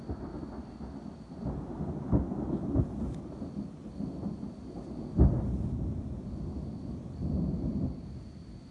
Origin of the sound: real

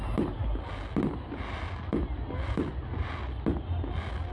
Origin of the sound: real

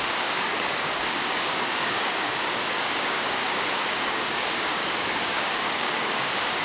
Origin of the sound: fake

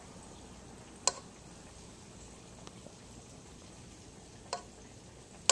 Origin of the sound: real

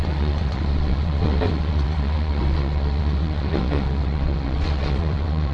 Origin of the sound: fake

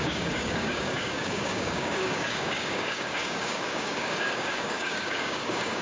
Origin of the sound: fake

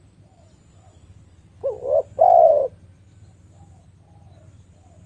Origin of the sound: real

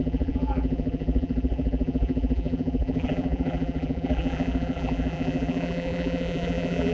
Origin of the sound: fake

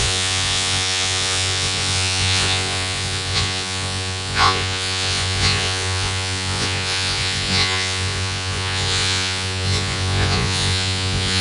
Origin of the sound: fake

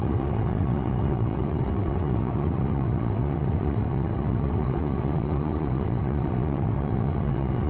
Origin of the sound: fake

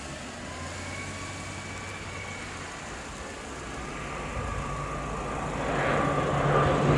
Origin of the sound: real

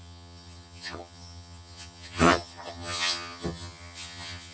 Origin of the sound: fake